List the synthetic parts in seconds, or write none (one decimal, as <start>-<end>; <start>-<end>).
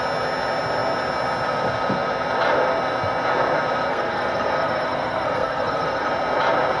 3.9-6.1